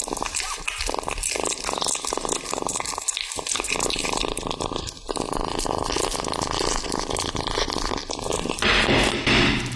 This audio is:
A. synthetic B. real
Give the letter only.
B